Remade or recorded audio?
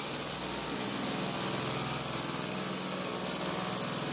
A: recorded